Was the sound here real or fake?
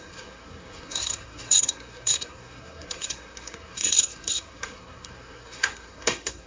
fake